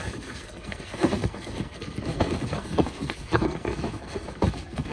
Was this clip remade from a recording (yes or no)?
yes